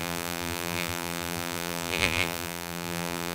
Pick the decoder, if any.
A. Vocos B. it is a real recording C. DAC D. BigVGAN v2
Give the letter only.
D